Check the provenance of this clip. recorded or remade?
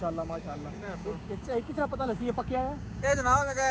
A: remade